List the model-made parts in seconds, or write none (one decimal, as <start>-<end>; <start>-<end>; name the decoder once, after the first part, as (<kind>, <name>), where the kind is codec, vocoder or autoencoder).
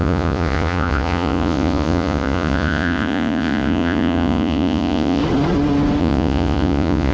0.0-5.2 (vocoder, Vocos); 6.0-7.1